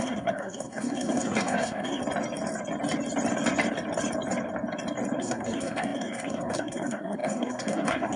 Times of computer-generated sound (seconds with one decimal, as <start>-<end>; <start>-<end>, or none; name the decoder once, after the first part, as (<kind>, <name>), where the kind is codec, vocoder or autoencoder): 0.0-2.0 (codec, SNAC); 5.2-8.2